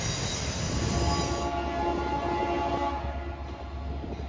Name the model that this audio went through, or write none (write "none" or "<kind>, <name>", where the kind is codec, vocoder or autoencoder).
none